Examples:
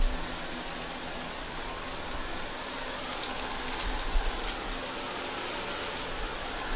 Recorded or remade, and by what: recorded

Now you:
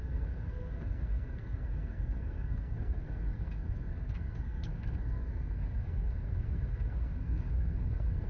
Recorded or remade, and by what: remade, codec, SNAC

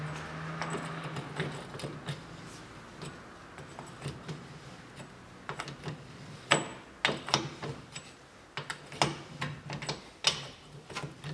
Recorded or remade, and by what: recorded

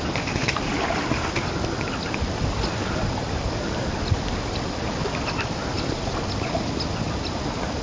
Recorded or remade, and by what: recorded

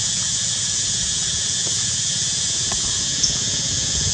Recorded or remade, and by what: remade, vocoder, Vocos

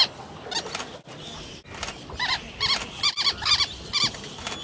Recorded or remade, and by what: recorded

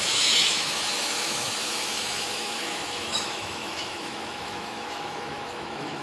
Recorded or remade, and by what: remade, autoencoder, DAC-VAE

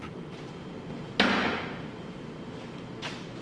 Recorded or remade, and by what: recorded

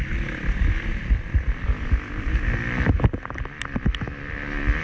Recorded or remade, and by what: recorded